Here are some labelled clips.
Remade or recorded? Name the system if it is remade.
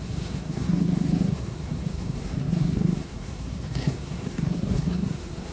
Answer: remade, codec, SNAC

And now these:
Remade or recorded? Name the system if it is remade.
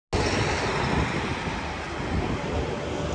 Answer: recorded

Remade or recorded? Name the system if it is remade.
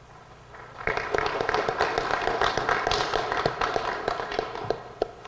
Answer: recorded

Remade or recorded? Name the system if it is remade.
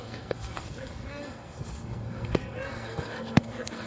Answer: remade, codec, SNAC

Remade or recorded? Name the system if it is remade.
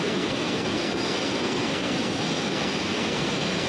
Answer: remade, codec, SNAC